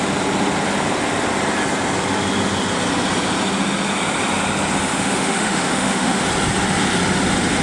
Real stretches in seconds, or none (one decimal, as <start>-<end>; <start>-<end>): 0.0-4.9; 6.2-7.6